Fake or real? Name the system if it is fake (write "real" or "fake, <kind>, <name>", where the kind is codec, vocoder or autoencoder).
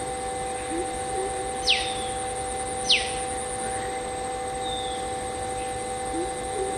real